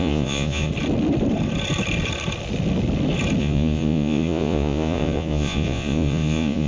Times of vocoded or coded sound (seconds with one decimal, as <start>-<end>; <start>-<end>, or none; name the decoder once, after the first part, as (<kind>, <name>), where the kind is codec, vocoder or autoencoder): 0.0-0.7 (vocoder, Vocos); 3.4-6.7